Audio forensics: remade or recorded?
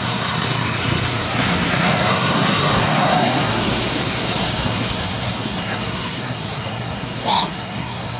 remade